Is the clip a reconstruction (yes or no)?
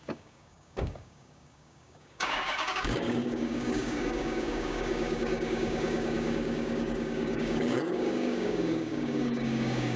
yes